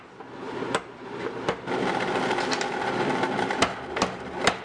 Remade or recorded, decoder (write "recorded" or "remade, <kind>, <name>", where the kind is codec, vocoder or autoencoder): recorded